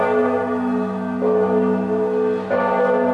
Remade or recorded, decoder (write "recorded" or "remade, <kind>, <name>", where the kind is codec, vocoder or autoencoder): recorded